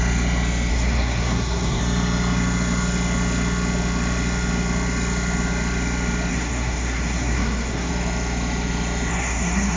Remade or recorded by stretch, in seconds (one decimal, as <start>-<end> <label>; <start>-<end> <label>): 0.0-0.7 recorded; 0.7-1.8 remade; 1.8-6.3 recorded; 6.3-7.9 remade; 7.9-9.1 recorded; 9.1-9.8 remade